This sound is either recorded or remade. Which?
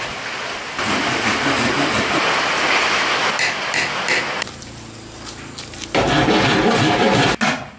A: recorded